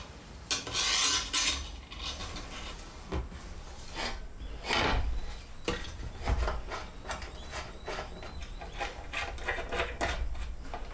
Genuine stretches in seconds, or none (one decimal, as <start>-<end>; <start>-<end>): 0.0-10.9

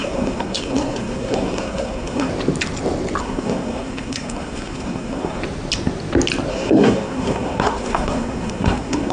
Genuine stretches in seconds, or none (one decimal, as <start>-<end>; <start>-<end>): 2.3-3.2; 5.4-6.5